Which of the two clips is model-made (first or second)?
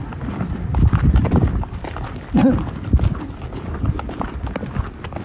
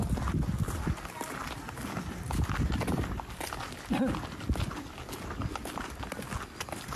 first